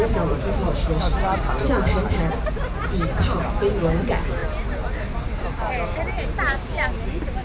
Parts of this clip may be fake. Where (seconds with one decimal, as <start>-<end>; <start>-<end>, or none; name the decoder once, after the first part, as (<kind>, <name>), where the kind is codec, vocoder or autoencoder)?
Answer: none